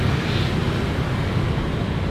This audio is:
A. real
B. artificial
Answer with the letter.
A